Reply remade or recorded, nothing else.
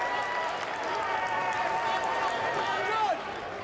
recorded